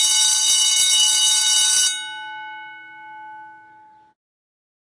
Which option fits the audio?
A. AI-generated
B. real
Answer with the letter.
B